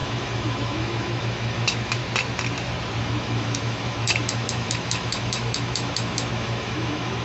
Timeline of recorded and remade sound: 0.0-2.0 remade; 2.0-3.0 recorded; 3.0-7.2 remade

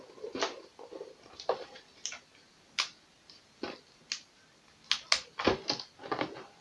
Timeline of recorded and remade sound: 0.0-6.6 recorded

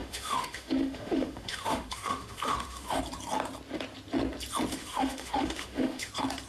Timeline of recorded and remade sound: 0.0-3.0 remade; 3.0-4.7 recorded; 4.7-6.1 remade; 6.1-6.5 recorded

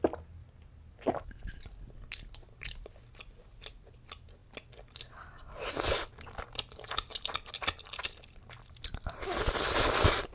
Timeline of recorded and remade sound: 0.0-10.3 recorded

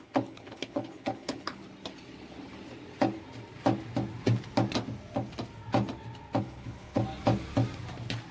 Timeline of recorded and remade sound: 0.0-1.6 remade; 1.6-6.4 recorded; 6.4-7.0 remade; 7.0-8.3 recorded

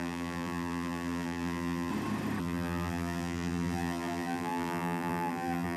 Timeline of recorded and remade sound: 0.0-1.9 remade; 1.9-2.4 recorded; 2.4-5.8 remade